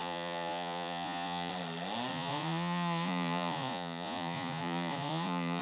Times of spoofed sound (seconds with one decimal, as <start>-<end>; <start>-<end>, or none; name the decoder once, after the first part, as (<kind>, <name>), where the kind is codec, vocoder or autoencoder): 0.0-1.5 (vocoder, Vocos); 2.1-5.6